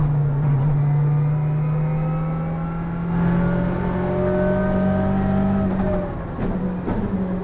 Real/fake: real